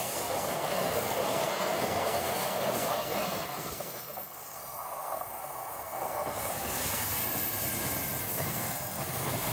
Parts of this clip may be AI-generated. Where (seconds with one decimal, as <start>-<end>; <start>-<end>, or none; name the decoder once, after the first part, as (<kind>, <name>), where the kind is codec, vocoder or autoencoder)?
0.0-7.2 (codec, SNAC); 8.2-9.5